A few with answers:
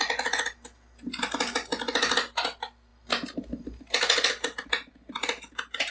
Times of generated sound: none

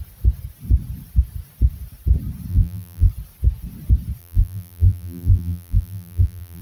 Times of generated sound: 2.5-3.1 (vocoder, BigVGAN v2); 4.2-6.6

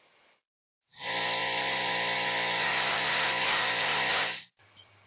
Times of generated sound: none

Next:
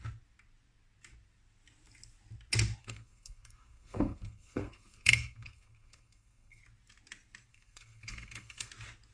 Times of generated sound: 2.8-6.6 (codec, SNAC); 7.5-8.7

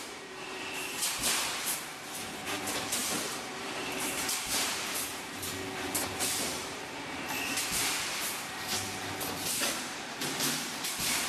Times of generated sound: 0.0-11.3 (vocoder, BigVGAN v2)

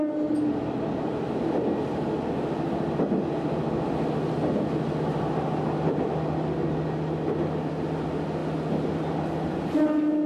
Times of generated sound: none

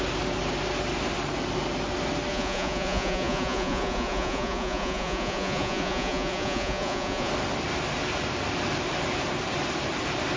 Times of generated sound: 2.3-7.3 (vocoder, Vocos)